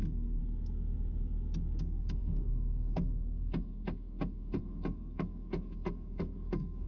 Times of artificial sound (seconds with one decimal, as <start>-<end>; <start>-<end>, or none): 0.0-0.4; 1.8-6.9